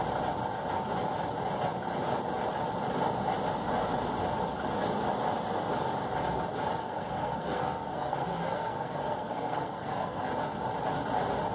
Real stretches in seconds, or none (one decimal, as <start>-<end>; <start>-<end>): 0.0-6.8; 10.2-11.5